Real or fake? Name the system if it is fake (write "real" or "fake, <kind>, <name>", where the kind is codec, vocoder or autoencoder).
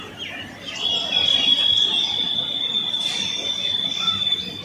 real